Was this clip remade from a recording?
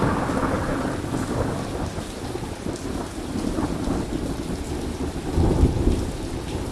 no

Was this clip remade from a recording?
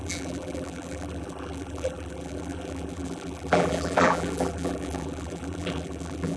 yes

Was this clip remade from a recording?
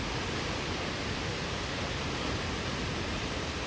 no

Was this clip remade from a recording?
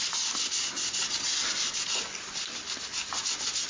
no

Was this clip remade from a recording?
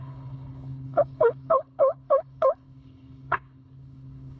yes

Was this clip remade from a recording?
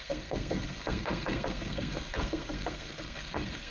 yes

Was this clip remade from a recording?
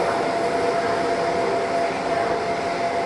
no